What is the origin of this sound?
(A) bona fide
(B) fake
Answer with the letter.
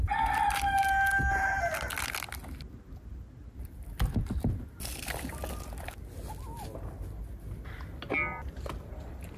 A